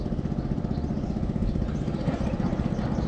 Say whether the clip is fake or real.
real